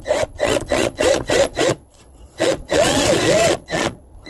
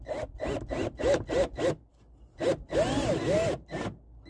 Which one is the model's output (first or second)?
first